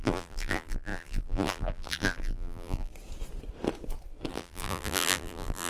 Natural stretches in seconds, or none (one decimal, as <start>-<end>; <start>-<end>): 2.9-4.3